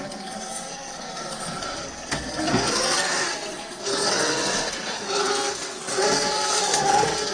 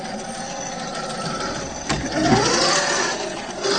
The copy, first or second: first